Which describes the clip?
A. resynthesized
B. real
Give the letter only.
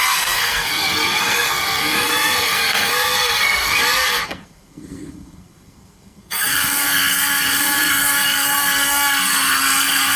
A